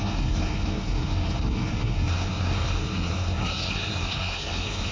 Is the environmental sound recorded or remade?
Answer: remade